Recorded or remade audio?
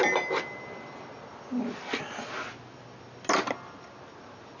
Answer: recorded